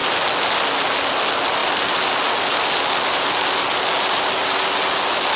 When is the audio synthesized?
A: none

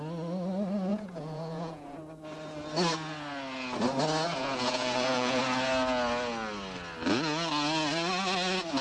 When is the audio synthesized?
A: 0.9-2.0; 4.4-5.4